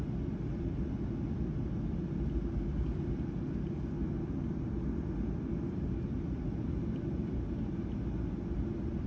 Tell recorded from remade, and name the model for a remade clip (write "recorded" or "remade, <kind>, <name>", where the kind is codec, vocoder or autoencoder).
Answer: recorded